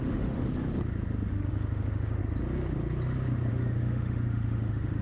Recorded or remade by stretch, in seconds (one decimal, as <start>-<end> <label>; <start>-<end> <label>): 0.0-0.4 remade; 0.4-1.3 recorded; 1.3-2.2 remade; 2.2-3.5 recorded; 3.5-5.0 remade